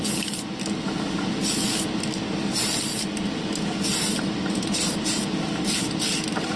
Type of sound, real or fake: real